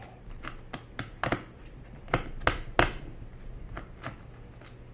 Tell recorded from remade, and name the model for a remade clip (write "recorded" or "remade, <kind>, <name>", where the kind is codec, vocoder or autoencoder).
recorded